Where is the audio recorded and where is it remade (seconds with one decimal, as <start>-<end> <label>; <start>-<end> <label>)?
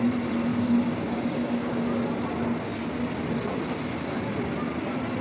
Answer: 0.0-0.5 recorded; 0.5-1.8 remade; 1.8-5.2 recorded